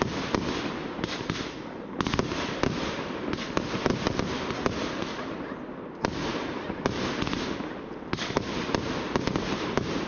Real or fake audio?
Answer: real